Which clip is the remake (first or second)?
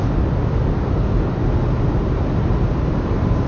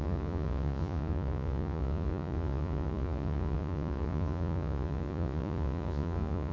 second